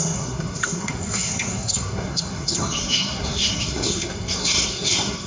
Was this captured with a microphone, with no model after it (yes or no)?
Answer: no